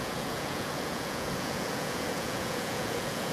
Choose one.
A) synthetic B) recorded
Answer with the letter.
A